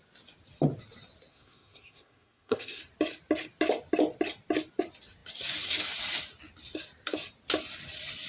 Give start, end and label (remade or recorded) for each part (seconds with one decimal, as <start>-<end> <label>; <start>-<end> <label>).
0.0-1.3 recorded; 1.3-2.8 remade; 2.8-8.3 recorded